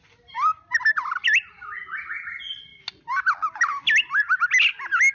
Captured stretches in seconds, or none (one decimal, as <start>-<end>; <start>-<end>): 0.0-5.1